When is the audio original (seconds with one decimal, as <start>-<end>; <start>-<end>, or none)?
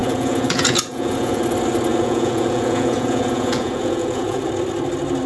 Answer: 1.4-1.9; 4.4-5.3